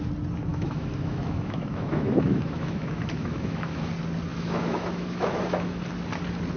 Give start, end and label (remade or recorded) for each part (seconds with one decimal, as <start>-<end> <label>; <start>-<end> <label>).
0.0-0.5 recorded; 0.5-3.9 remade; 3.9-4.3 recorded; 4.3-5.8 remade; 5.8-6.6 recorded